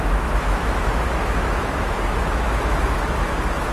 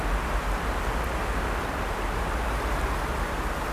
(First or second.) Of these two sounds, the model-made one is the first